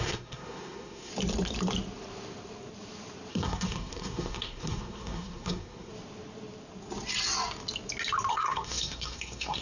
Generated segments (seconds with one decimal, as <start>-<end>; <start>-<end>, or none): 0.0-1.1; 3.3-5.9; 8.3-9.6